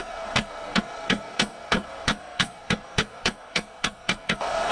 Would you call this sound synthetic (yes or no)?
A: yes